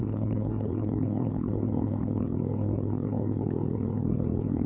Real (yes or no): no